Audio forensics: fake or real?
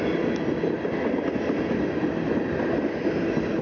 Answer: real